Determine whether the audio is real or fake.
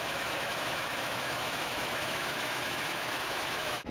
fake